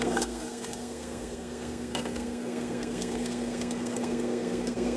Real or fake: fake